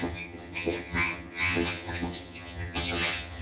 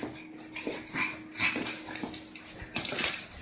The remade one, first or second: first